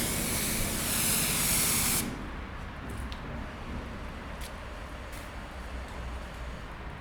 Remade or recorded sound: recorded